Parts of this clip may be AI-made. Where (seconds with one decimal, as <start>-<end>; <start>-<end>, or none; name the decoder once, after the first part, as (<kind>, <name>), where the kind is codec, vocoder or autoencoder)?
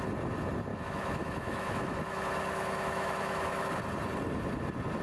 0.7-3.7 (autoencoder, DAC-VAE)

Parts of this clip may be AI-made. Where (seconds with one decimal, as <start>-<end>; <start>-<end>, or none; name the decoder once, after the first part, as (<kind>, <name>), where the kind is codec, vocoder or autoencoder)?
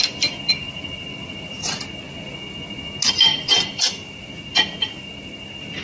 0.6-1.8 (vocoder, BigVGAN v2); 3.3-5.1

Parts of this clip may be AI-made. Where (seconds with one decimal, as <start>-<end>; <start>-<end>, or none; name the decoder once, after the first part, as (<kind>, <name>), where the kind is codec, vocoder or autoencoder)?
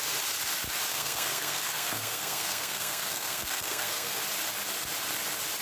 0.9-4.2 (codec, SNAC)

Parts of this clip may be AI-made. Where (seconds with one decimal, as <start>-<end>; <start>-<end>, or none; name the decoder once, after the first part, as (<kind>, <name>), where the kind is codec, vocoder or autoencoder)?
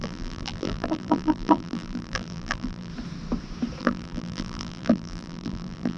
0.0-2.9 (vocoder, BigVGAN v2); 3.8-6.0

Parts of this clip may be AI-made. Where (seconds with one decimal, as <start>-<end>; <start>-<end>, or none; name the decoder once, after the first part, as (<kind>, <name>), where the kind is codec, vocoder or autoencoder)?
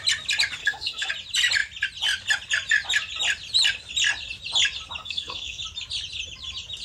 0.6-1.1 (codec, SNAC); 5.0-5.6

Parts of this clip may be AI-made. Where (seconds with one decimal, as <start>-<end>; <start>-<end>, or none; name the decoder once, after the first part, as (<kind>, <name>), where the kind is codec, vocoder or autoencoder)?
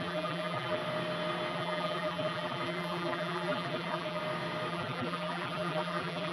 0.0-0.8 (vocoder, BigVGAN v2); 1.5-4.2; 4.7-6.3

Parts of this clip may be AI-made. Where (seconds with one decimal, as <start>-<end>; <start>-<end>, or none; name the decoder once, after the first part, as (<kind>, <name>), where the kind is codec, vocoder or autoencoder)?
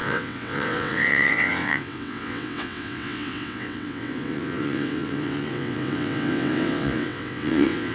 0.0-7.9 (vocoder, WaveNeXt)